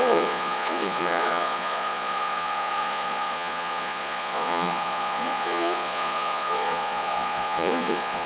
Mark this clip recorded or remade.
remade